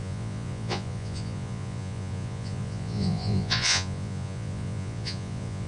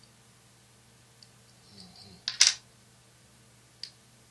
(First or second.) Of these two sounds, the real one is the second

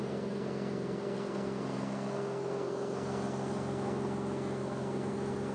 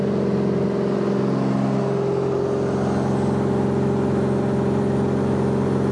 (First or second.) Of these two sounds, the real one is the second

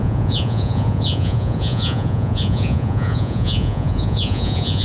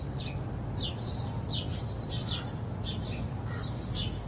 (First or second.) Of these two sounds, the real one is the second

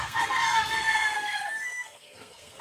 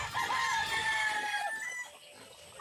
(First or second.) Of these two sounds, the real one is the second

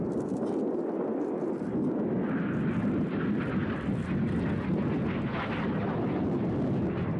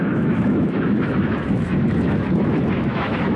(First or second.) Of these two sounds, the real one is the first